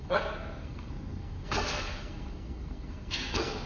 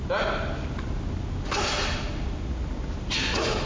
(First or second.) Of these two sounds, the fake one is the first